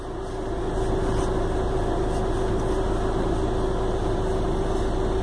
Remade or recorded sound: recorded